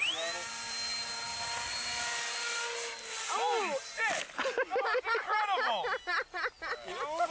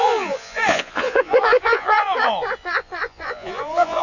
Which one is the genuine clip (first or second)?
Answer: first